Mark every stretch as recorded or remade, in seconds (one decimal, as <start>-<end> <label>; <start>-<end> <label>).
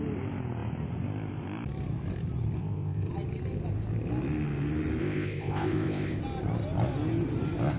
0.0-2.6 recorded; 2.6-3.1 remade; 3.1-5.0 recorded; 5.0-6.2 remade; 6.2-7.8 recorded